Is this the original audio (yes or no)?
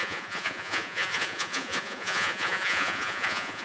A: no